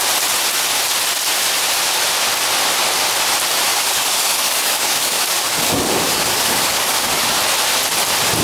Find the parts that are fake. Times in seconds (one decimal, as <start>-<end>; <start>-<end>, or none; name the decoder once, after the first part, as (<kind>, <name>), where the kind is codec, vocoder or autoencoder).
3.7-7.2 (codec, DAC)